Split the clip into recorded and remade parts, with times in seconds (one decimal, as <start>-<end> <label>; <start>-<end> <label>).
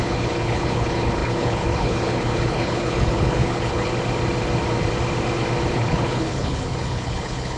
0.0-3.9 remade; 3.9-5.7 recorded; 5.7-7.6 remade